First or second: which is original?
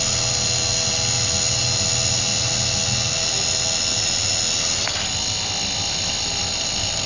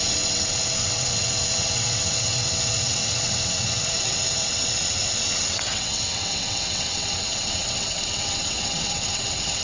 first